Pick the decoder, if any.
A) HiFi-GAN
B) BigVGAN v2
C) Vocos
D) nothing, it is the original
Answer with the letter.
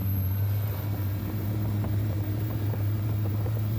B